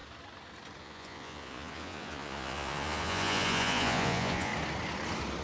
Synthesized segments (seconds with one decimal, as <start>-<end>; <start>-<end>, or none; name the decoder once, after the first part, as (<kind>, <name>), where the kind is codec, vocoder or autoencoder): 0.8-4.5 (vocoder, Vocos)